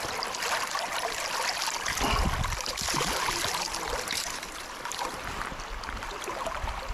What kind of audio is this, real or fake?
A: real